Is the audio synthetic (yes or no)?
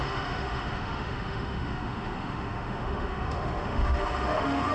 yes